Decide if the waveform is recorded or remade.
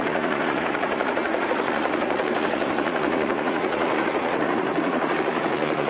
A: remade